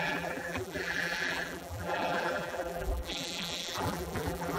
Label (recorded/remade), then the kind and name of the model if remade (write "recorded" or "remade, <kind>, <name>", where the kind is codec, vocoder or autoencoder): remade, vocoder, BigVGAN v2